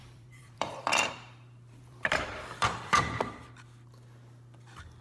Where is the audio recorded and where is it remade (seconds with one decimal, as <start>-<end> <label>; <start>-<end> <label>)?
0.0-3.0 remade; 3.0-5.0 recorded